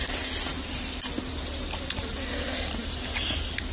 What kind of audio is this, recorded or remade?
recorded